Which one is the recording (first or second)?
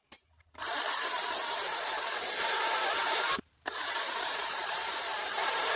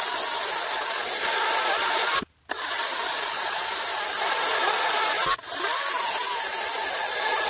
second